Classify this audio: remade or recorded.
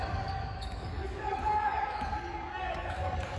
remade